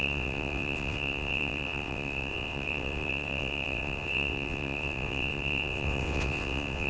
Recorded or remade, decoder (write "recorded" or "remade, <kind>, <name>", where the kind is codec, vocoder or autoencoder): remade, vocoder, WaveNeXt